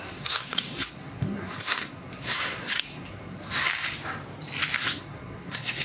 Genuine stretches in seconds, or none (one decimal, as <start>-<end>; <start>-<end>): 3.7-4.8